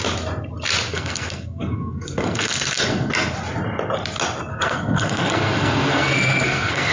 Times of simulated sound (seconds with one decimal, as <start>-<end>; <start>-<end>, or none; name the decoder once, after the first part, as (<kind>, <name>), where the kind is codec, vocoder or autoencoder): 0.9-3.1 (codec, SNAC); 4.5-6.9